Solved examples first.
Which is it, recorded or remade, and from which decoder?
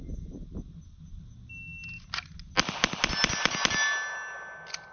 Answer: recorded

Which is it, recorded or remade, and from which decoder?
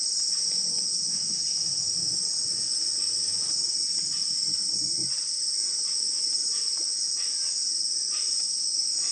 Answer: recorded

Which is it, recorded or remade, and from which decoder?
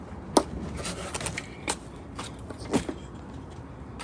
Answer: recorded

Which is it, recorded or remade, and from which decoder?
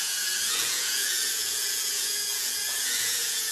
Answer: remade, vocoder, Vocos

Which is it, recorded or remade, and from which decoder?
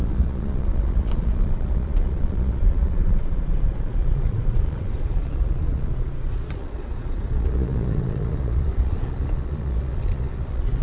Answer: remade, vocoder, Vocos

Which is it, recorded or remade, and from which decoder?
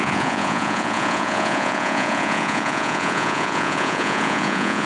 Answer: remade, vocoder, Vocos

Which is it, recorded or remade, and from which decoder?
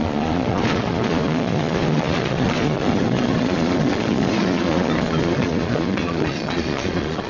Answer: remade, vocoder, Vocos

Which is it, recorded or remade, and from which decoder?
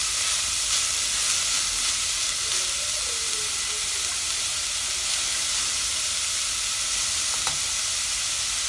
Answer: recorded